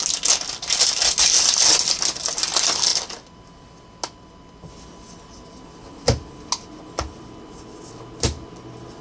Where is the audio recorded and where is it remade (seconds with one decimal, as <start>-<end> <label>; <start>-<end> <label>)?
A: 0.0-9.0 recorded